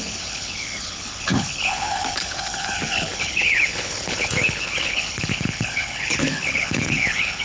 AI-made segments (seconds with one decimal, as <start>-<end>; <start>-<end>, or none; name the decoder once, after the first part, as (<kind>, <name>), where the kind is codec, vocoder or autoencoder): 0.0-7.4 (codec, HILCodec)